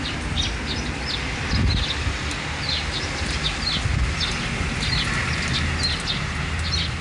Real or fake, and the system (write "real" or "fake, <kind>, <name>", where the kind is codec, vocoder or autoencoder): real